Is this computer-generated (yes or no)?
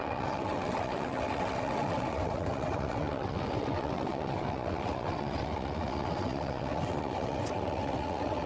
yes